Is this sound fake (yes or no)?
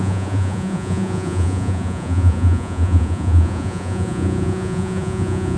yes